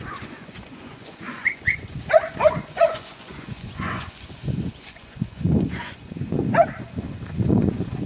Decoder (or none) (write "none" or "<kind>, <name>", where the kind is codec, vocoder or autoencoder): vocoder, Vocos